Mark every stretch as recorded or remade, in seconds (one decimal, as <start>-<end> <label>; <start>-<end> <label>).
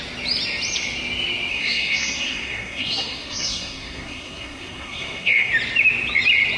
0.0-1.5 recorded; 1.5-5.5 remade; 5.5-6.6 recorded